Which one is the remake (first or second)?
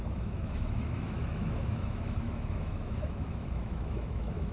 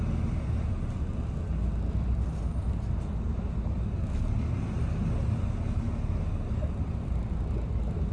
first